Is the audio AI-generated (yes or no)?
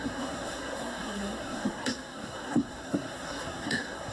yes